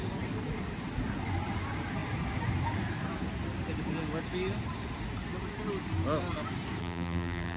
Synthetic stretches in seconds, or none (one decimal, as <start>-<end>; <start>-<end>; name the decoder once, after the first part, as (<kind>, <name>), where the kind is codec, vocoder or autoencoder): 6.8-7.6 (vocoder, BigVGAN v2)